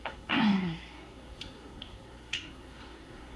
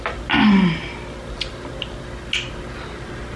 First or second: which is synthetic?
first